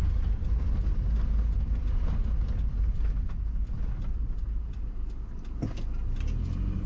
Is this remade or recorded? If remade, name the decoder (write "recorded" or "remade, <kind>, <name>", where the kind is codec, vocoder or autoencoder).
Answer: recorded